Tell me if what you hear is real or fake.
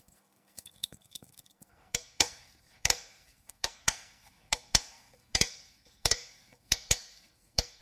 fake